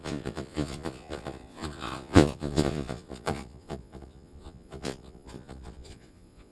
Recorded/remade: remade